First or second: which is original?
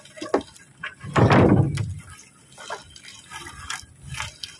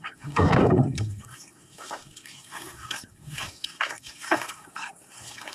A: first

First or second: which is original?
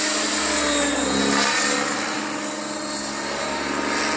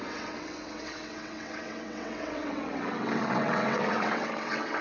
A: first